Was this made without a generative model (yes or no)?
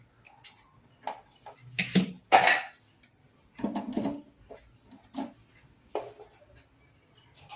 yes